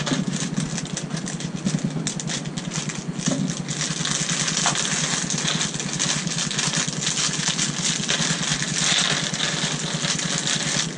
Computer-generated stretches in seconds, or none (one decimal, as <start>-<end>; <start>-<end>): none